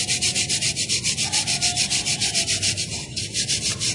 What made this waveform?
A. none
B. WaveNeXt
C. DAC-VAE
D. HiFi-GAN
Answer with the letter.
A